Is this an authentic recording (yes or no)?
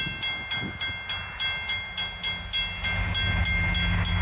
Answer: yes